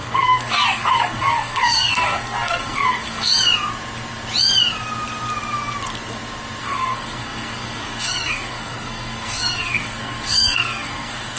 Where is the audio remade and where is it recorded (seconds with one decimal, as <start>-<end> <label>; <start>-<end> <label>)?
0.0-3.3 remade; 3.3-6.6 recorded; 6.6-11.4 remade